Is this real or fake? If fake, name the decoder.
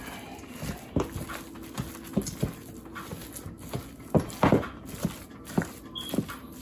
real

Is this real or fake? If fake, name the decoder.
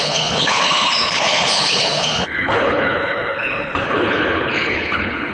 fake, codec, HILCodec